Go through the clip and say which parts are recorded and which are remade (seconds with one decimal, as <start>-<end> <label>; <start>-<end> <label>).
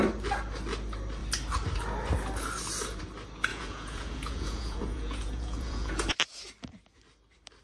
0.0-3.5 recorded; 3.5-6.1 remade; 6.1-7.6 recorded